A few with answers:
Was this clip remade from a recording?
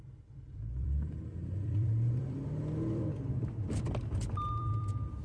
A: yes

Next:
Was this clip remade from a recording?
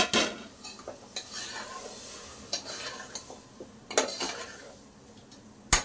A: no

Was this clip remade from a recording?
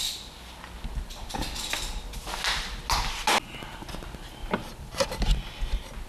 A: no